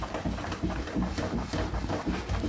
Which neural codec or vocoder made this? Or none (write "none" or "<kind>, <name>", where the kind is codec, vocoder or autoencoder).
vocoder, BigVGAN v2